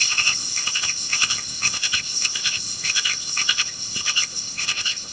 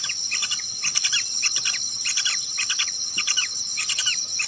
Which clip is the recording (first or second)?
second